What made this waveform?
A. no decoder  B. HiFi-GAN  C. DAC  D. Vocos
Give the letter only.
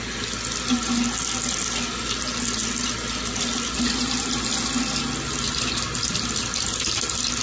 A